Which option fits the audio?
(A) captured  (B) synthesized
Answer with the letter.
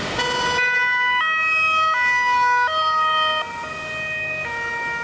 A